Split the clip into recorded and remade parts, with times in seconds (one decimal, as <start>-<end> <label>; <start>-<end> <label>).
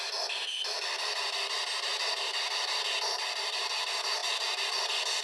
0.0-5.2 recorded